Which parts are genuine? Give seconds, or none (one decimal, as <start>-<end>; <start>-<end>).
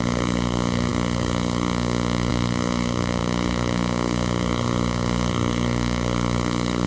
none